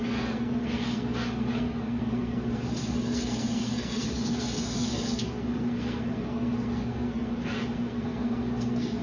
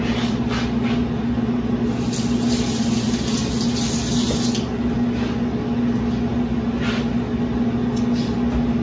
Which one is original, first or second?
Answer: second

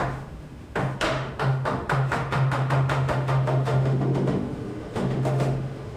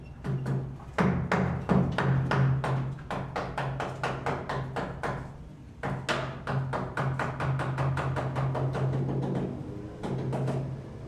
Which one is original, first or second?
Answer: second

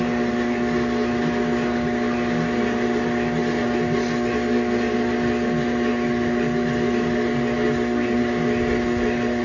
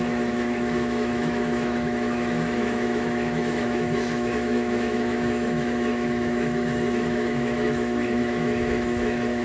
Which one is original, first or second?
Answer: first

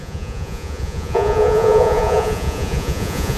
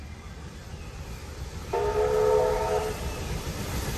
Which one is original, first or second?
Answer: second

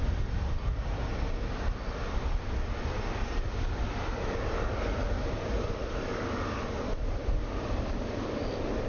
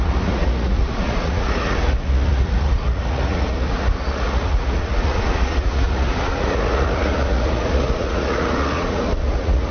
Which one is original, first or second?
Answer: first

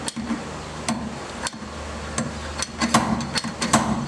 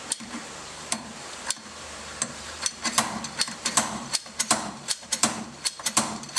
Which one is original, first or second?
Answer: first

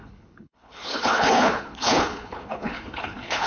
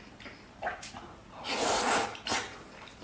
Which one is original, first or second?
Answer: second